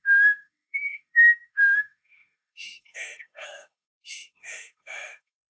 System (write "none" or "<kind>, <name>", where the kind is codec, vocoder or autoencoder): autoencoder, DAC-VAE